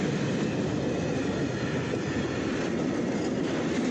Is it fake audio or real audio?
real